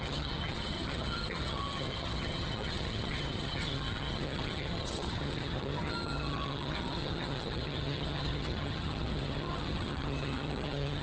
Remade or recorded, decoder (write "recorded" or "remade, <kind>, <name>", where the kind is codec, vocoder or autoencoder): remade, vocoder, HiFi-GAN